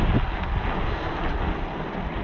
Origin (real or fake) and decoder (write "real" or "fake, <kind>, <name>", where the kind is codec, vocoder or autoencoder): real